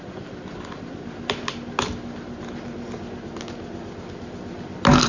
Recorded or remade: recorded